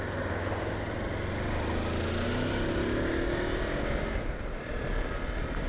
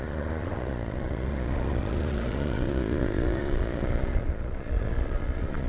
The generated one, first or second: second